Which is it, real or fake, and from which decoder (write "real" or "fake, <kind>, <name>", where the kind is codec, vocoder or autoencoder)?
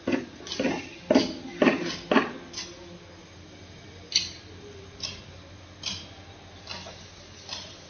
real